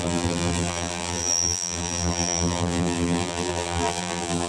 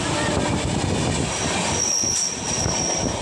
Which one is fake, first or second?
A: first